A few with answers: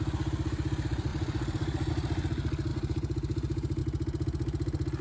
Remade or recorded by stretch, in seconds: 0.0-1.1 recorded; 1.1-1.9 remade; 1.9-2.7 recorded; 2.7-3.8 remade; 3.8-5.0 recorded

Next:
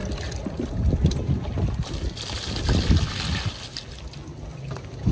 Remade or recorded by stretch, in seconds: 0.0-5.1 recorded

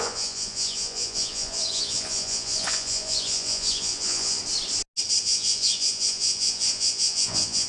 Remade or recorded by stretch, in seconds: 0.0-4.4 remade; 4.4-5.2 recorded; 5.2-7.7 remade

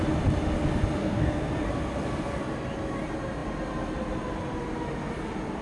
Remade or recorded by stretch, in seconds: 0.0-1.0 recorded; 1.0-1.5 remade; 1.5-5.6 recorded

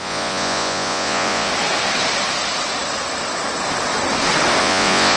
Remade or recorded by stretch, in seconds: 0.0-1.5 remade; 1.5-4.6 recorded; 4.6-5.2 remade

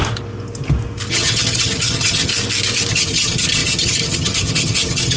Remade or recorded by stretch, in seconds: 0.0-1.1 recorded; 1.1-2.3 remade; 2.3-2.9 recorded; 2.9-5.2 remade

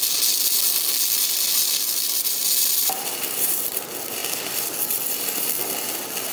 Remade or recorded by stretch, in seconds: 0.0-1.6 recorded; 1.6-3.7 remade; 3.7-6.3 recorded

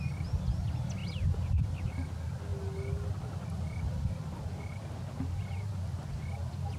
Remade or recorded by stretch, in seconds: 0.0-6.8 recorded